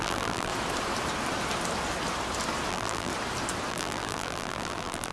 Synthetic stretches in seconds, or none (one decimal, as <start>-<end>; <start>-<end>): 0.0-0.5; 2.7-3.1; 3.7-5.1